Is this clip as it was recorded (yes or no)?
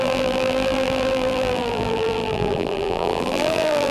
no